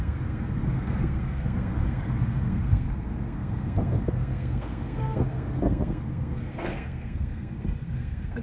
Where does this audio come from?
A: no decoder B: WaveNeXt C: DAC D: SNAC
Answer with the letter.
D